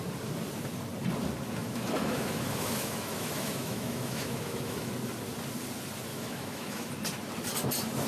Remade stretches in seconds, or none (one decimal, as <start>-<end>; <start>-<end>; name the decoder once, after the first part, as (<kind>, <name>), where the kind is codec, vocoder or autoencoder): 1.6-4.9 (autoencoder, DAC-VAE); 6.1-6.9